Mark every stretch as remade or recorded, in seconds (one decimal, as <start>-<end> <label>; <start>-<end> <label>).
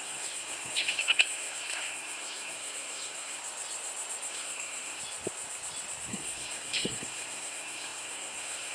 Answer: 0.0-3.4 remade; 3.4-4.3 recorded; 4.3-5.0 remade; 5.0-6.1 recorded; 6.1-8.7 remade